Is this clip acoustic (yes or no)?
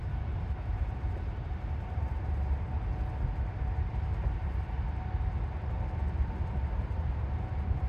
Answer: yes